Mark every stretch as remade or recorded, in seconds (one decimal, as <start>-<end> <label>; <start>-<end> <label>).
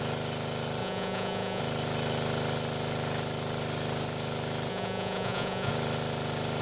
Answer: 0.0-0.8 recorded; 0.8-1.6 remade; 1.6-4.7 recorded; 4.7-5.7 remade; 5.7-6.6 recorded